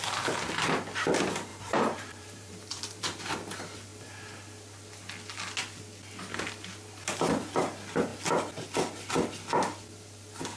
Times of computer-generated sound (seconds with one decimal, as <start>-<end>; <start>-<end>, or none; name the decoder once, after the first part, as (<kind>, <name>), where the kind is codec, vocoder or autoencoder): 1.5-3.3 (vocoder, BigVGAN v2)